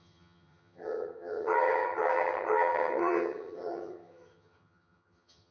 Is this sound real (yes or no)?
no